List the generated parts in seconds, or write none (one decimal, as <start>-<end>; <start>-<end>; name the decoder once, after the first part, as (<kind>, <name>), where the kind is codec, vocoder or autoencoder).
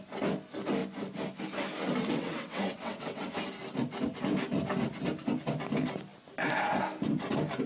2.0-3.3 (vocoder, WaveNeXt)